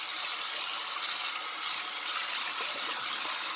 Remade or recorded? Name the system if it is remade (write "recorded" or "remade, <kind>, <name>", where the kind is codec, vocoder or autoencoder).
recorded